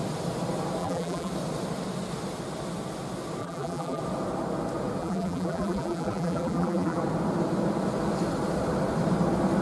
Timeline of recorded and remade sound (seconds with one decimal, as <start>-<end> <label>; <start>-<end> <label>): 0.0-0.8 recorded; 0.8-1.3 remade; 1.3-3.4 recorded; 3.4-4.0 remade; 4.0-5.0 recorded; 5.0-7.0 remade; 7.0-9.6 recorded